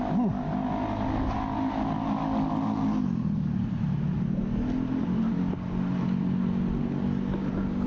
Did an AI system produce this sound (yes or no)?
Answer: no